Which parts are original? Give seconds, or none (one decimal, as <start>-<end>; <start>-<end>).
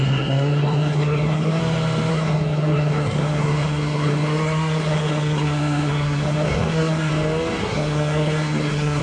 1.6-2.1; 7.1-7.6